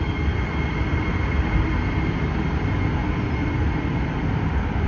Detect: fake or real real